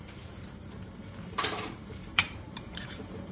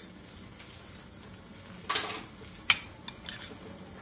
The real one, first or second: second